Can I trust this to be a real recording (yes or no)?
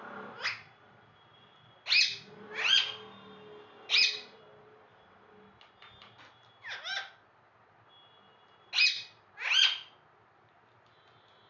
yes